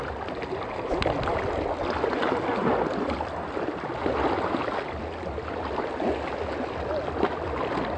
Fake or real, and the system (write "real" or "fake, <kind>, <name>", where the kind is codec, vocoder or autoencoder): real